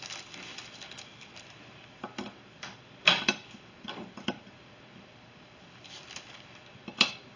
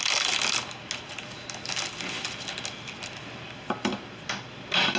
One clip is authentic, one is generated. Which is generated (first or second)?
first